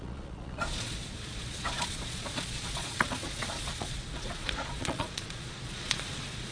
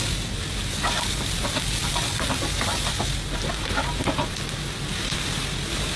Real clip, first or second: second